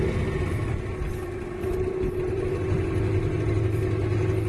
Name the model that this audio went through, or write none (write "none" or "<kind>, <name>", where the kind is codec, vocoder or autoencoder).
none